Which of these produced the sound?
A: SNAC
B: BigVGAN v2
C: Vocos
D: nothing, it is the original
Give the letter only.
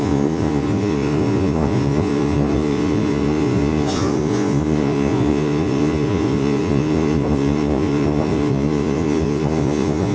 C